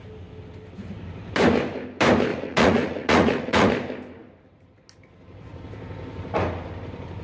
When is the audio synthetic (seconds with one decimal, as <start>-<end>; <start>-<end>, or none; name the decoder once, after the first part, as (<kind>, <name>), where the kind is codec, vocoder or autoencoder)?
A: 2.3-3.7 (vocoder, Vocos)